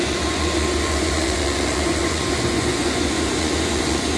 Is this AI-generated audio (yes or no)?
yes